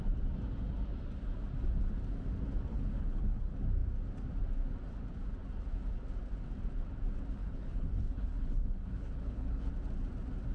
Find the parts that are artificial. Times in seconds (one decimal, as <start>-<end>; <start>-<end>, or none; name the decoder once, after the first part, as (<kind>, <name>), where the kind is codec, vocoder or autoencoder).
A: 2.7-3.4 (codec, HILCodec); 7.4-9.7